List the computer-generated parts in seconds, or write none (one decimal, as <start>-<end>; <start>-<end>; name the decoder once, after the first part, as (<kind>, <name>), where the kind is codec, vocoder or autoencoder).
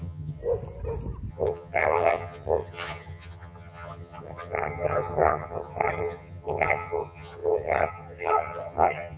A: 0.0-0.4 (vocoder, HiFi-GAN); 1.3-9.2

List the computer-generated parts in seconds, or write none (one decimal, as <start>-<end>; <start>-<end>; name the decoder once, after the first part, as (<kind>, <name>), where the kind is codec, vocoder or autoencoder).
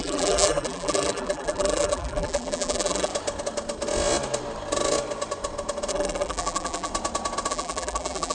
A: 0.0-3.1 (vocoder, BigVGAN v2); 5.9-6.9; 7.5-8.3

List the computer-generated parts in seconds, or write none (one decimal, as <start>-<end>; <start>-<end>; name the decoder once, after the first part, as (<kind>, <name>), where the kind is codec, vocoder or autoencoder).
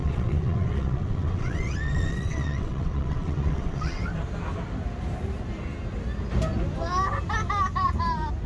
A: 0.0-4.0 (vocoder, WaveNeXt)